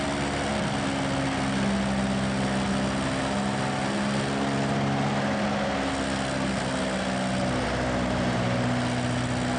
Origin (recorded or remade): recorded